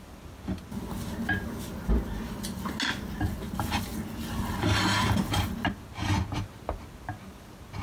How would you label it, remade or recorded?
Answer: recorded